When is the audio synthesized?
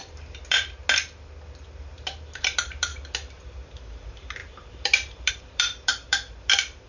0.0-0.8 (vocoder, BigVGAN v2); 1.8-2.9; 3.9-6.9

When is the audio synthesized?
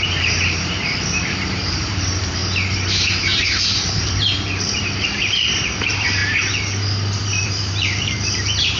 0.0-2.4 (vocoder, BigVGAN v2); 3.9-6.2; 7.2-8.8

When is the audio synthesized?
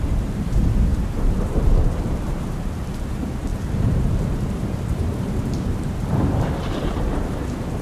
0.0-7.8 (vocoder, BigVGAN v2)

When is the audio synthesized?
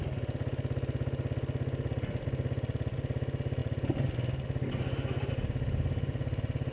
none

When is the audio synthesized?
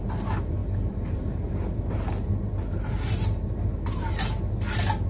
0.6-3.7 (vocoder, BigVGAN v2)